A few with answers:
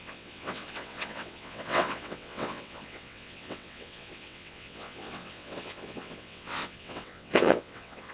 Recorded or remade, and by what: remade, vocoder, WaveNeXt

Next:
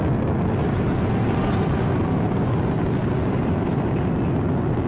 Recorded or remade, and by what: recorded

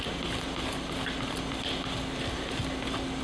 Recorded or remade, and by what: recorded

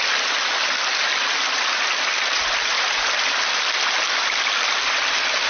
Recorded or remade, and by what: recorded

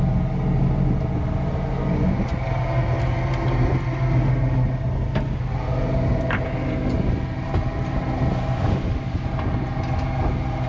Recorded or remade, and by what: recorded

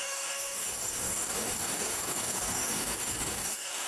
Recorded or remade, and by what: remade, codec, DAC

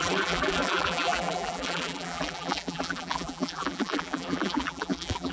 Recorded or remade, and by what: remade, vocoder, BigVGAN v2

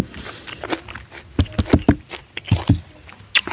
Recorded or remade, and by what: recorded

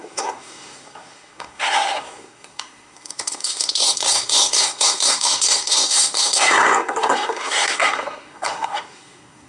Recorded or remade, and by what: remade, codec, SNAC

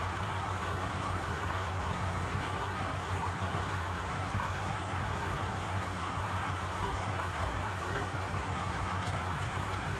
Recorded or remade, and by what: remade, codec, SNAC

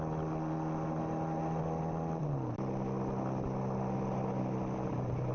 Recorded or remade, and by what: recorded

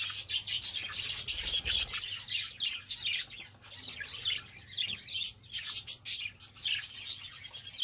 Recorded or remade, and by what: recorded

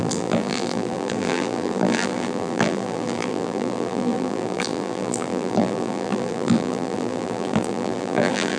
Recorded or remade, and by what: remade, vocoder, BigVGAN v2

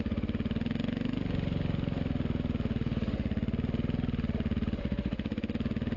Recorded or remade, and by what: recorded